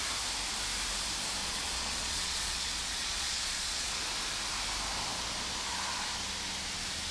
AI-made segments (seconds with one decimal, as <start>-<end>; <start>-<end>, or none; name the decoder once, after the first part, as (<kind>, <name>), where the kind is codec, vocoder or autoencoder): 1.4-4.0 (vocoder, Vocos)